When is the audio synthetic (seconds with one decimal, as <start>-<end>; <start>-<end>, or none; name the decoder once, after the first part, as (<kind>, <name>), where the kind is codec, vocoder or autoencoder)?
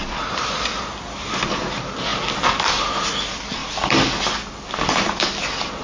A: none